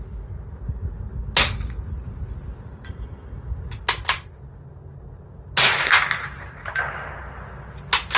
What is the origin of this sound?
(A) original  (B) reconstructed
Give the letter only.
A